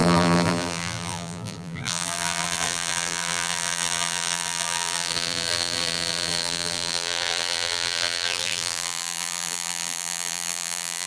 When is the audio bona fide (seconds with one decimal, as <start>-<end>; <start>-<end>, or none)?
none